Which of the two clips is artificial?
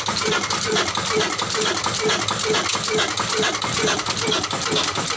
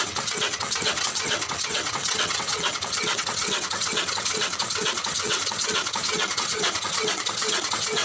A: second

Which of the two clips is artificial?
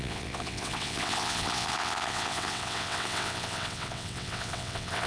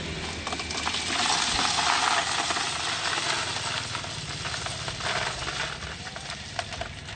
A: first